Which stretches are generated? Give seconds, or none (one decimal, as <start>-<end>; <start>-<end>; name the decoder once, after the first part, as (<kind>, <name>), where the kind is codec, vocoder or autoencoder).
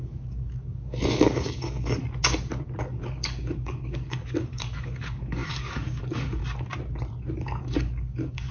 0.0-2.0 (codec, DAC); 2.8-6.4; 7.4-8.5